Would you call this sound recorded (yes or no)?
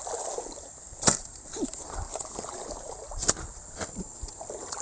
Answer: yes